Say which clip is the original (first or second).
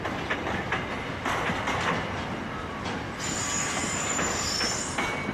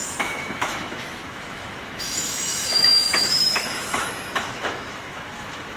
first